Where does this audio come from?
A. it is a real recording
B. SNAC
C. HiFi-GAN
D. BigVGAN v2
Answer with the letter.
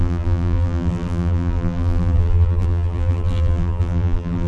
D